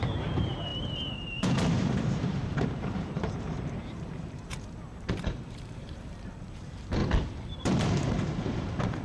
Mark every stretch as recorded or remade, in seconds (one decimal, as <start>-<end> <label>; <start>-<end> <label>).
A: 0.0-7.0 remade; 7.0-7.6 recorded; 7.6-9.0 remade